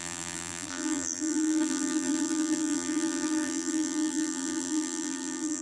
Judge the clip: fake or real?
fake